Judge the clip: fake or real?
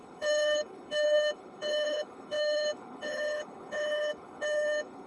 fake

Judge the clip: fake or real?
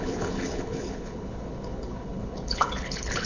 fake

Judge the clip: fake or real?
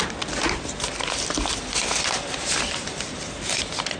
real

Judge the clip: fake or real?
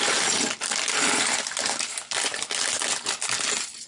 real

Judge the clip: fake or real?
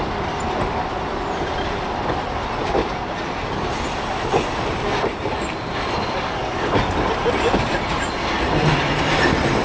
real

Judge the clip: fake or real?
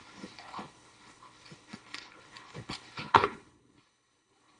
fake